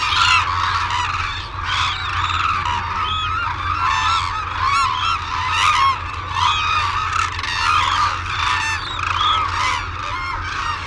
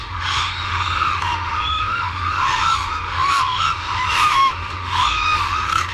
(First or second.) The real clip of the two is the first